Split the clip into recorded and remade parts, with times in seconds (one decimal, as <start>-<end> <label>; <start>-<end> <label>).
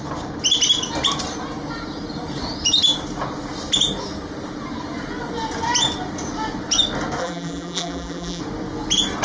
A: 0.0-7.2 recorded; 7.2-8.4 remade; 8.4-9.2 recorded